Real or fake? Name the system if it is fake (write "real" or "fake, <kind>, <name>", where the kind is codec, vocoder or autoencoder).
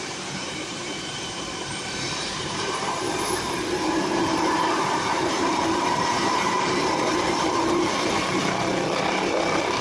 fake, vocoder, BigVGAN v2